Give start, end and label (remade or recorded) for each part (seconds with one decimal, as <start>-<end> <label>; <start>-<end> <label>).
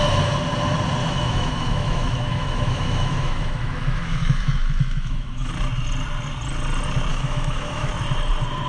0.0-1.0 recorded; 1.0-5.5 remade; 5.5-7.1 recorded; 7.1-7.9 remade; 7.9-8.7 recorded